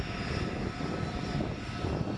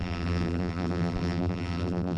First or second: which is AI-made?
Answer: second